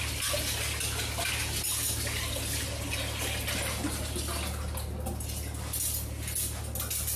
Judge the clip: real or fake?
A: real